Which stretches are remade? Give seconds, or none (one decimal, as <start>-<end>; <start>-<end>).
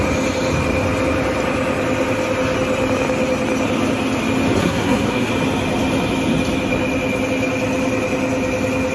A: 4.6-5.3